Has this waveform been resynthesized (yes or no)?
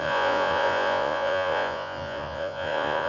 yes